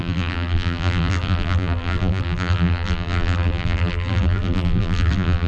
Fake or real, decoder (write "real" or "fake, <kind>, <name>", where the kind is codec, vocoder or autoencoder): fake, vocoder, BigVGAN v2